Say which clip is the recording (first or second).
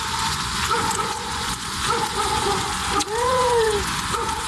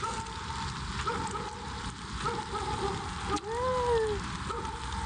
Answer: second